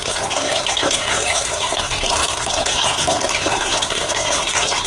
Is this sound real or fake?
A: fake